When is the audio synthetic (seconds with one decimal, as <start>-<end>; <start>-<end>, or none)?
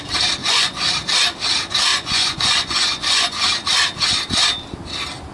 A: 0.4-0.9; 1.9-3.5